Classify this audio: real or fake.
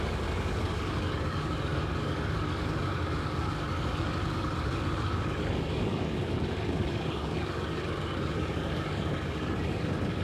fake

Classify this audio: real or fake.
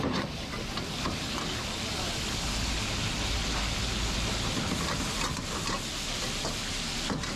real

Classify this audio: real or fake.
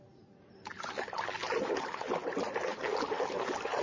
real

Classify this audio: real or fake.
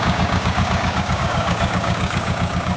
fake